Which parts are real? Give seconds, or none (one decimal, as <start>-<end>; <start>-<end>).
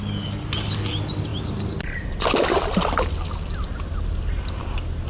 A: 0.0-1.3; 4.4-5.1